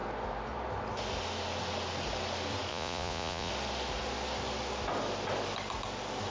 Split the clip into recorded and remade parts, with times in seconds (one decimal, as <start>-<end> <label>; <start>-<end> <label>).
0.0-2.7 recorded; 2.7-3.5 remade; 3.5-6.3 recorded